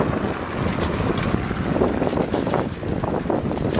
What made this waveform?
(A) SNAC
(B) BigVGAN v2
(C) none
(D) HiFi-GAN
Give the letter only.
C